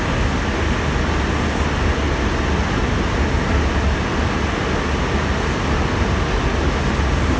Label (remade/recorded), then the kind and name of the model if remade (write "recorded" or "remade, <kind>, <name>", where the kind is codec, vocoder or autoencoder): recorded